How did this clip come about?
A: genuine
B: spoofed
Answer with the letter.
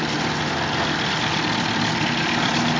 A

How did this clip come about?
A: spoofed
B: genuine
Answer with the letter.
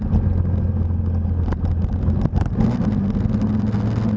B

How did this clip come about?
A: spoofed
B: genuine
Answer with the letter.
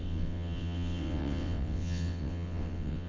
A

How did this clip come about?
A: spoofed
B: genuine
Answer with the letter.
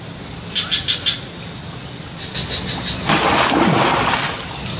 B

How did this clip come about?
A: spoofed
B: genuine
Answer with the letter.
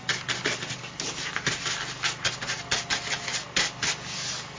B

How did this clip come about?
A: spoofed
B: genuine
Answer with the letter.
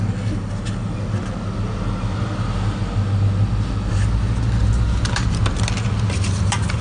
B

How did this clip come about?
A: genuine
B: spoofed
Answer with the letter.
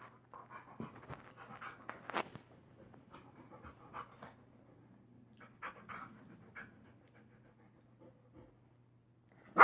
A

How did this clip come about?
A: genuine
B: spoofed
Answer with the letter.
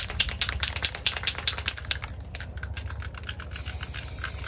A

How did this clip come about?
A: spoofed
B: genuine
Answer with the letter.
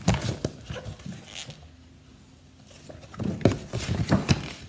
B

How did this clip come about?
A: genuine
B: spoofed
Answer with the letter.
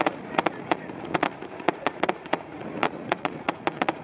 B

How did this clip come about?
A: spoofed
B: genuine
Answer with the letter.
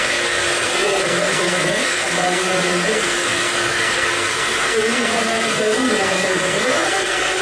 A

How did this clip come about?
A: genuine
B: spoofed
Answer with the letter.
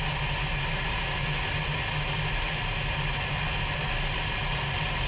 A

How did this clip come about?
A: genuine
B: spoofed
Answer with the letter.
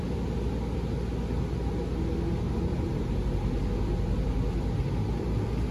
A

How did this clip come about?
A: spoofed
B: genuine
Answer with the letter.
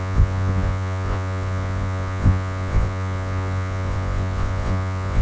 A